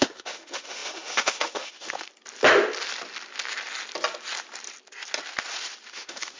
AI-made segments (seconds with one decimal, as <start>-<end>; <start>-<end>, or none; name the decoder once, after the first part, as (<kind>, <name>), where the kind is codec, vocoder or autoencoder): 0.0-2.1 (autoencoder, DAC-VAE); 5.9-6.4